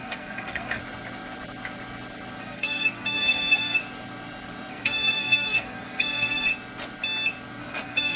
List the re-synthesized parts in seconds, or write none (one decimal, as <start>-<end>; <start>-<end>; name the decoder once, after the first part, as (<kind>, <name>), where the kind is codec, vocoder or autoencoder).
0.0-0.8 (codec, SNAC); 2.4-3.8; 4.7-6.5; 7.6-8.2